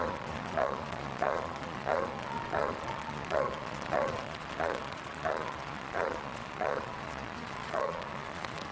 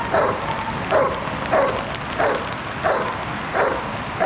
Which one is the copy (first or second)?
first